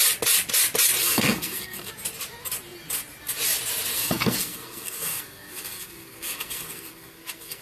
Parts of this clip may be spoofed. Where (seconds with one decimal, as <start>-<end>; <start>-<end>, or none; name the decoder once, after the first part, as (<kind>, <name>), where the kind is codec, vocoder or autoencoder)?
1.0-1.9 (codec, SNAC); 3.9-7.6